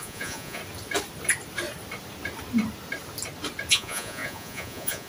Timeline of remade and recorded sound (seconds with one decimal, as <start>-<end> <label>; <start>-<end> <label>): 0.0-0.6 remade; 0.6-3.7 recorded; 3.7-5.1 remade